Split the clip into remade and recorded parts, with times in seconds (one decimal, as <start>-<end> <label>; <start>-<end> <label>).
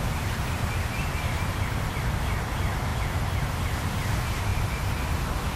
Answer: 0.0-4.5 recorded; 4.5-5.6 remade